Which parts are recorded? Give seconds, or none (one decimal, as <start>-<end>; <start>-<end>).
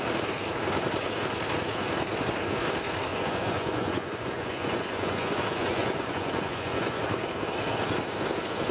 0.0-3.1; 7.0-8.7